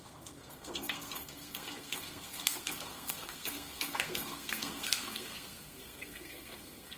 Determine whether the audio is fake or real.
fake